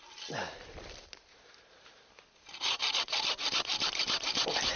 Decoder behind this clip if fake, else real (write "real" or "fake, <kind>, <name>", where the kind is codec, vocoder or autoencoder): real